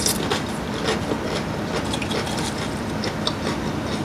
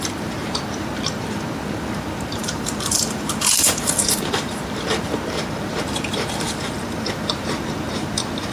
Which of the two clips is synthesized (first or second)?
second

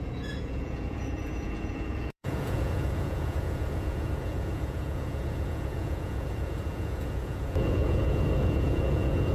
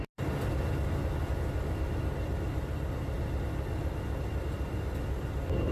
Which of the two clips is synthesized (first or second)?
first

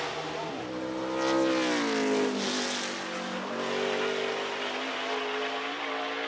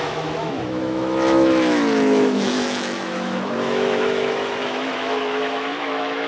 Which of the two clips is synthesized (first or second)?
second